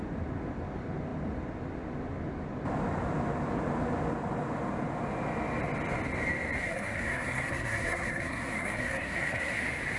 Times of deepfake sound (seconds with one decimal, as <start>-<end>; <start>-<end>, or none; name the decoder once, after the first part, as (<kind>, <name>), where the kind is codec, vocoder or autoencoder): 6.6-9.6 (codec, SNAC)